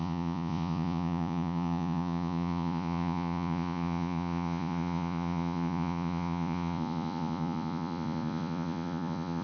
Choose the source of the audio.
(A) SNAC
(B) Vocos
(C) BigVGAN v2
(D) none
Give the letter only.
B